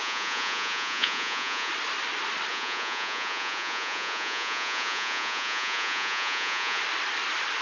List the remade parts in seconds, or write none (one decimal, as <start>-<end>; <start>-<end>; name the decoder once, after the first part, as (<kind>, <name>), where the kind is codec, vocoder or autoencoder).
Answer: 0.0-1.7 (vocoder, Vocos); 2.5-6.8